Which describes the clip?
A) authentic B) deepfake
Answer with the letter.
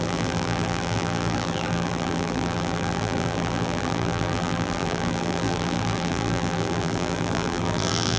B